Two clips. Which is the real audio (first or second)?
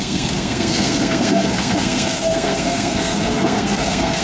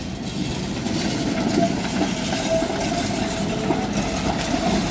second